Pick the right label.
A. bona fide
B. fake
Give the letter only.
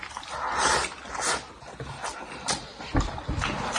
A